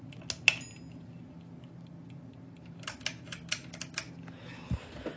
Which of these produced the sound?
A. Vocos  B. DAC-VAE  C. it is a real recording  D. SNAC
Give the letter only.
C